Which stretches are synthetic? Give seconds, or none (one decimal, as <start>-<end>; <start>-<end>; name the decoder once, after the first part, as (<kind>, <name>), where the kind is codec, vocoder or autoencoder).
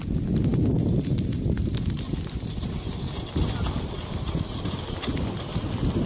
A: 0.5-2.9 (vocoder, BigVGAN v2)